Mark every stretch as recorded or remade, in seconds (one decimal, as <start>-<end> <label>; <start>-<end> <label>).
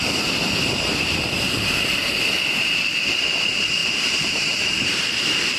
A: 0.0-3.8 recorded; 3.8-5.0 remade; 5.0-5.6 recorded